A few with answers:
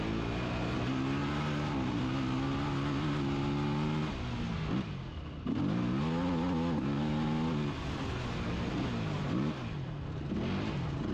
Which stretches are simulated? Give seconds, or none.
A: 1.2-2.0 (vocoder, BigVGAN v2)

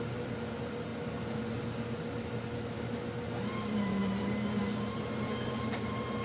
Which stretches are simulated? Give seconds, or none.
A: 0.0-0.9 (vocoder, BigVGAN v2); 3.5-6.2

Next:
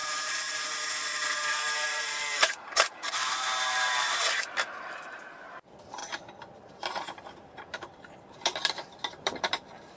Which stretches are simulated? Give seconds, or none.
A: 0.0-6.0 (vocoder, BigVGAN v2); 6.7-10.0

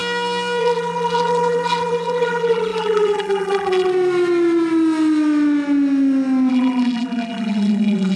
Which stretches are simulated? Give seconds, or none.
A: 0.6-3.9 (vocoder, BigVGAN v2); 6.5-8.2

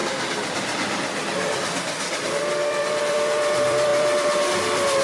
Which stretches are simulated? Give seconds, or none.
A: 0.0-5.0 (vocoder, BigVGAN v2)